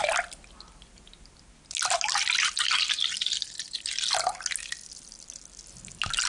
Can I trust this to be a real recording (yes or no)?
yes